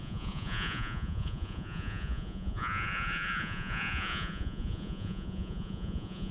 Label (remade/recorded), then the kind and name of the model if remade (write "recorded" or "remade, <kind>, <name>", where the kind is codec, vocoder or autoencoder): remade, vocoder, Vocos